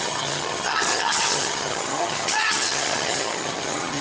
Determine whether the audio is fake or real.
fake